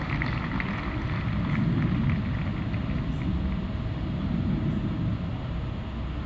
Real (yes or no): yes